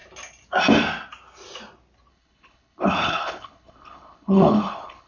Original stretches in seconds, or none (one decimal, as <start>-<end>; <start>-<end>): 0.0-2.1